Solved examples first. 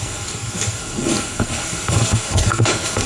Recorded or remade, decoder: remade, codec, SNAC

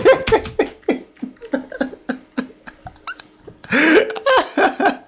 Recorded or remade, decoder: recorded